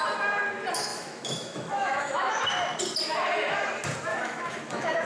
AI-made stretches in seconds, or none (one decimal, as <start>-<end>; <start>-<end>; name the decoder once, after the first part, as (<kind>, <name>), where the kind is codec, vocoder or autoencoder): 0.9-2.4 (autoencoder, DAC-VAE); 4.1-5.1